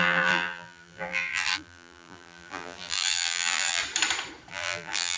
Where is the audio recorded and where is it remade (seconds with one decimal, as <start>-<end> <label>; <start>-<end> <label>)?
0.0-3.8 remade; 3.8-4.5 recorded; 4.5-5.2 remade